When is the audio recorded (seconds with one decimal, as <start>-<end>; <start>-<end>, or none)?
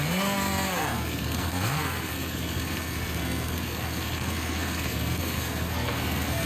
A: none